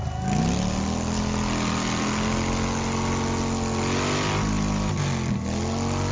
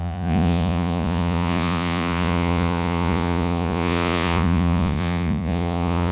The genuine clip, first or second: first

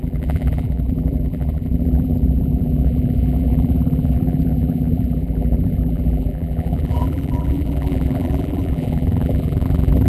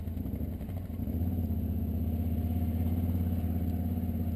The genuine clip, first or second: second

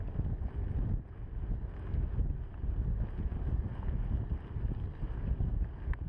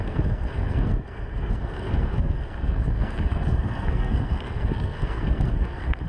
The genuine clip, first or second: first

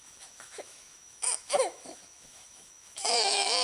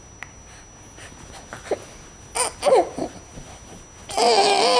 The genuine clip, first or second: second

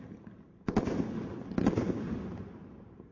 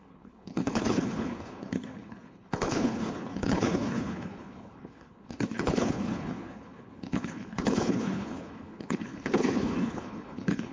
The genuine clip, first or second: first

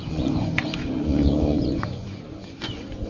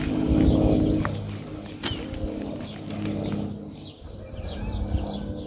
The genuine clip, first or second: second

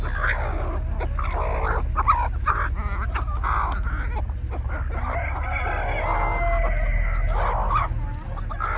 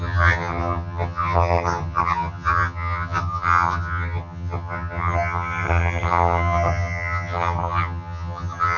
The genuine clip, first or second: first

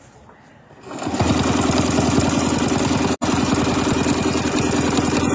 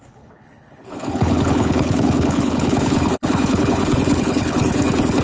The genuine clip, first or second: first